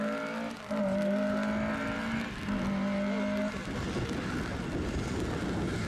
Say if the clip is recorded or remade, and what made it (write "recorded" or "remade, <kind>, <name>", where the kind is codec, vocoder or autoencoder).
recorded